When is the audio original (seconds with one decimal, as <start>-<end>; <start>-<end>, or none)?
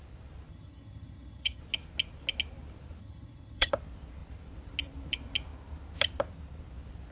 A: 0.0-0.5; 1.6-3.0; 3.7-7.1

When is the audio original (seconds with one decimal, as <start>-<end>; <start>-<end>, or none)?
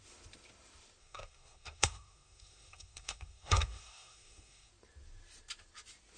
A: 0.0-1.0; 4.7-6.2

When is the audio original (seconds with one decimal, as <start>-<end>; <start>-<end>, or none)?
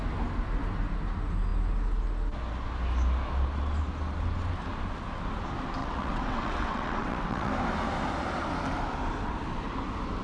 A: 0.0-5.8; 7.5-10.2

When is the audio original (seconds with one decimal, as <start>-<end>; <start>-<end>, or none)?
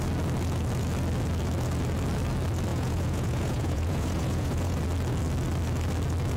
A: 0.0-2.7; 4.8-6.4